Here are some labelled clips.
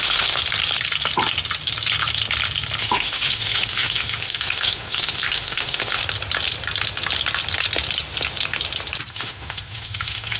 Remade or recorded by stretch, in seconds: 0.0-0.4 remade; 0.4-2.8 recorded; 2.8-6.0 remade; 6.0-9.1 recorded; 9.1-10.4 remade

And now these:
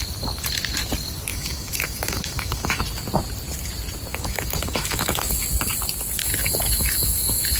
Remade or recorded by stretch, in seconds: 0.0-1.3 recorded; 1.3-2.8 remade; 2.8-4.1 recorded; 4.1-5.5 remade; 5.5-6.2 recorded; 6.2-7.6 remade

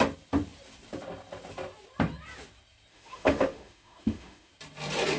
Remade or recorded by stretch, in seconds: 0.0-2.9 recorded; 2.9-4.5 remade; 4.5-5.2 recorded

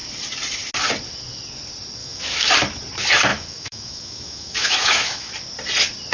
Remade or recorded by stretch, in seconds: 0.0-2.0 recorded; 2.0-2.5 remade; 2.5-3.3 recorded; 3.3-5.3 remade; 5.3-6.1 recorded